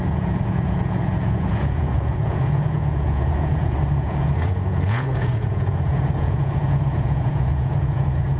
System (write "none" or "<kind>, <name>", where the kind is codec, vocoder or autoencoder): vocoder, Vocos